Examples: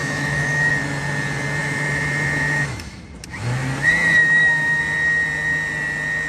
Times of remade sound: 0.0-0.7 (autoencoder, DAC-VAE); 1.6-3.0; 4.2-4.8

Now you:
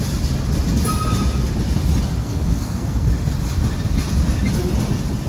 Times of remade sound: 2.2-3.1 (codec, SNAC)

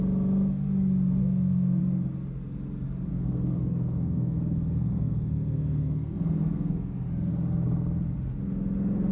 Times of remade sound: 1.2-1.8 (codec, SNAC); 3.1-7.3

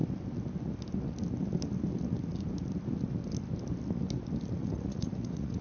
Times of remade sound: 4.6-5.6 (vocoder, Vocos)